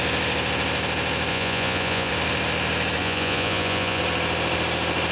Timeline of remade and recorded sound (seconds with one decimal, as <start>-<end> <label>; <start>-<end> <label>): 0.0-1.3 recorded; 1.3-2.1 remade; 2.1-3.0 recorded; 3.0-4.0 remade; 4.0-5.1 recorded